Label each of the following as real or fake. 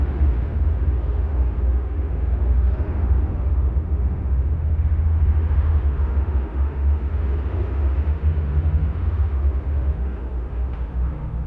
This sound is fake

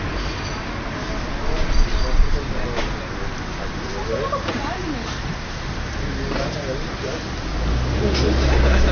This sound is real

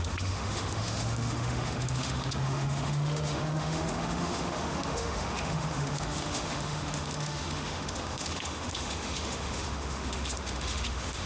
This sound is fake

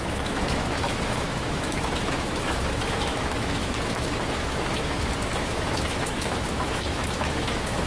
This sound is fake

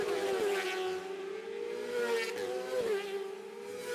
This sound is real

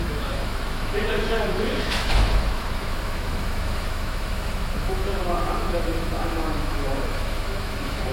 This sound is fake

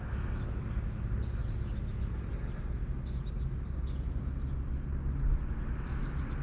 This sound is real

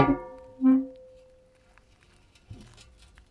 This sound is real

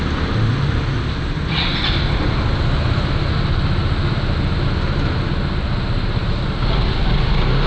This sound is real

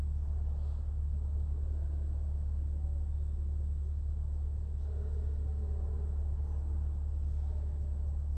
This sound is real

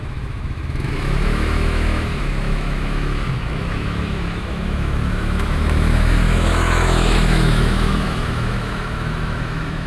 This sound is fake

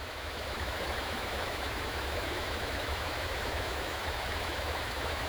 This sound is fake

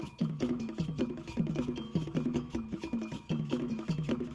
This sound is fake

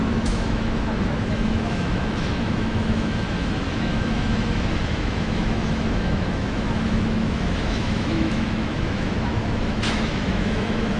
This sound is fake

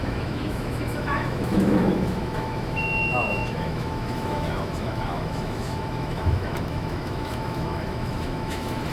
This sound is fake